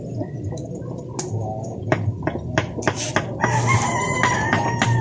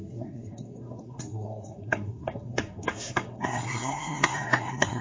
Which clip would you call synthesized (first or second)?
second